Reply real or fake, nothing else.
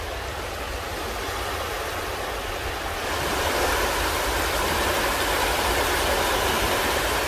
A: real